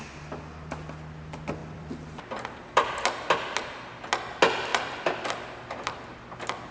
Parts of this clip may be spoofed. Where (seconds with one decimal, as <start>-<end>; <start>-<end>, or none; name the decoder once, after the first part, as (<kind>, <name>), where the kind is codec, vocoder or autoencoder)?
1.6-3.1 (vocoder, BigVGAN v2); 4.7-5.3